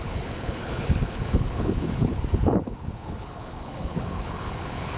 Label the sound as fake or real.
fake